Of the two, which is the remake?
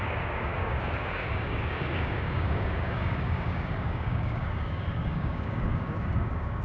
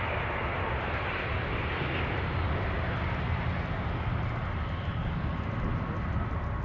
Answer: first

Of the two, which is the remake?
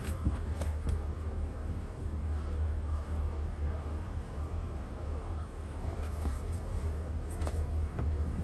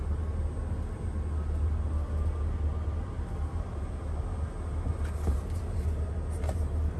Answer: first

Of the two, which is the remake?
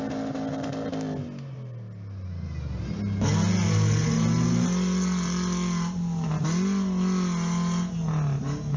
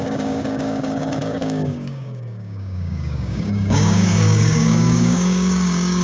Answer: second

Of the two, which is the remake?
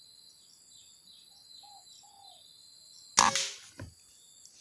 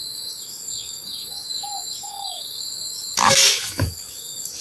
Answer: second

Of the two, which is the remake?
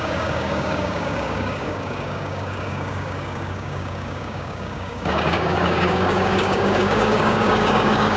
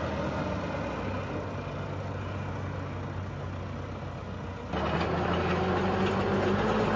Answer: first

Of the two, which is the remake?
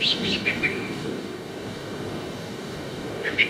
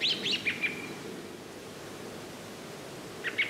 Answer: first